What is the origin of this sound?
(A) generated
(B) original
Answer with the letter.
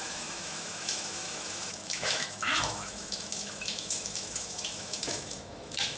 A